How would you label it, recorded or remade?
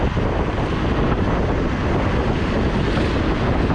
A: recorded